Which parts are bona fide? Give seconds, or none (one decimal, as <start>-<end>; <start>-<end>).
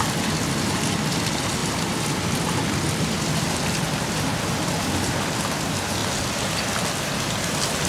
0.0-7.9